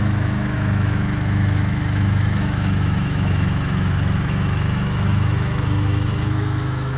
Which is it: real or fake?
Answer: fake